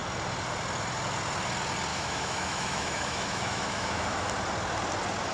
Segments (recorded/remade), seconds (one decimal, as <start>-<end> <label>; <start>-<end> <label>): 0.0-1.9 recorded; 1.9-4.3 remade; 4.3-5.3 recorded